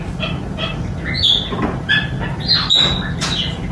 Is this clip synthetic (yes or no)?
no